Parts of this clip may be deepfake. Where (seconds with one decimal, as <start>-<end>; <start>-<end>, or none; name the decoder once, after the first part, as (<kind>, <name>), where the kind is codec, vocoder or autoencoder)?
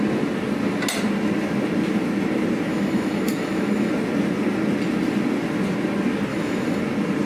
2.7-3.9 (autoencoder, DAC-VAE); 6.3-6.8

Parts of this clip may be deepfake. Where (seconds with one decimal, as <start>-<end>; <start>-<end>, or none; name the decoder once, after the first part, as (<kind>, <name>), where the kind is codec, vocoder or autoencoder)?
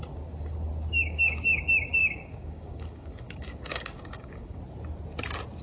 1.0-1.6 (codec, DAC); 2.0-4.6